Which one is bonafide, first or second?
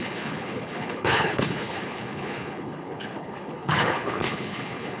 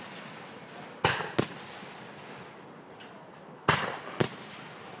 second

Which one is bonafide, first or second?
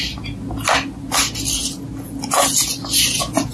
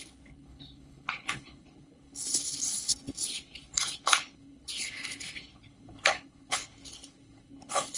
first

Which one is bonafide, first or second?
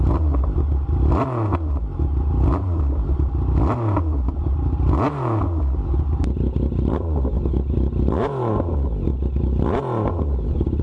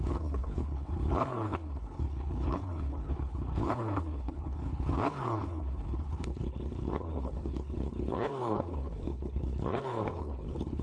first